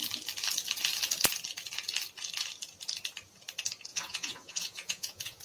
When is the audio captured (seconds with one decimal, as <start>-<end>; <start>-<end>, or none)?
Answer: 0.0-3.9

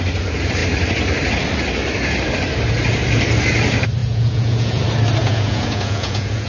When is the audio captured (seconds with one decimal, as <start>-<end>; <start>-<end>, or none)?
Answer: 0.0-4.0; 4.8-5.2

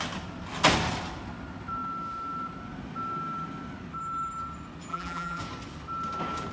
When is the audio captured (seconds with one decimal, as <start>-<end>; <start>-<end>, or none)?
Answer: 0.0-4.9; 5.4-6.5

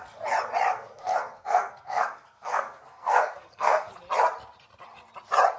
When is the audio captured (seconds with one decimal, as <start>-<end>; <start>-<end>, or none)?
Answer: 0.0-0.7; 3.9-5.6

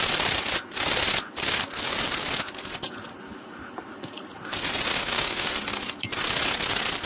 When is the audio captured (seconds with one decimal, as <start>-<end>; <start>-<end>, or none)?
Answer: 0.0-4.9; 5.5-7.1

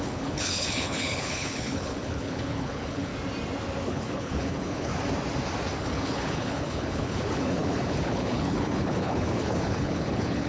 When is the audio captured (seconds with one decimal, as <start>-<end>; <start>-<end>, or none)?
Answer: 3.1-3.9; 4.9-5.8

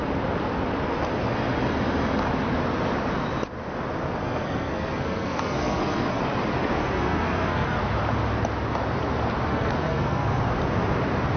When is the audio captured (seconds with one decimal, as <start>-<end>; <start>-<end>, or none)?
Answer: 0.0-4.2; 6.2-6.8; 7.8-9.5; 10.4-11.4

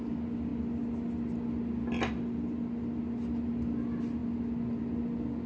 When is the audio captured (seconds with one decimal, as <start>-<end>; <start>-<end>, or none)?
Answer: 0.0-5.5